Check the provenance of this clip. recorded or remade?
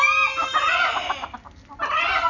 recorded